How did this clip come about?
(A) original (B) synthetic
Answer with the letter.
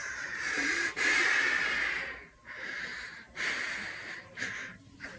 B